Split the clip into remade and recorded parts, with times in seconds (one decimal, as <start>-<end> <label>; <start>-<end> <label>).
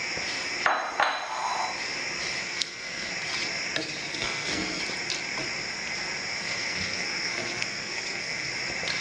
0.0-2.4 recorded; 2.4-3.1 remade; 3.1-4.1 recorded; 4.1-4.8 remade; 4.8-6.3 recorded; 6.3-8.5 remade; 8.5-9.0 recorded